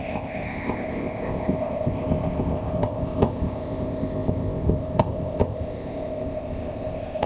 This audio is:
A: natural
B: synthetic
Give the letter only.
B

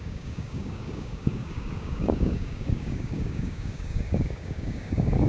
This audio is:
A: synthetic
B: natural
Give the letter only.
A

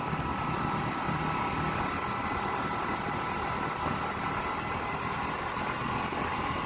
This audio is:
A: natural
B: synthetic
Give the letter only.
A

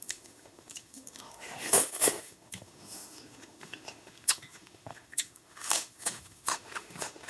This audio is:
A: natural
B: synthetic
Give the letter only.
B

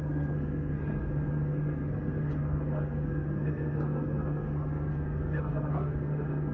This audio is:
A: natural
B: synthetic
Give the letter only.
B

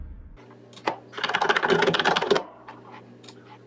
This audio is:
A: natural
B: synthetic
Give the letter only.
A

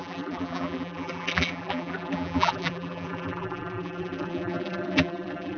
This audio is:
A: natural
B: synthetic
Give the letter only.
B